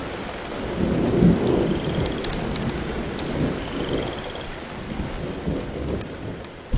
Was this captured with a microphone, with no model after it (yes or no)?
yes